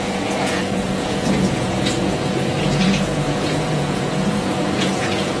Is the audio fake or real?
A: fake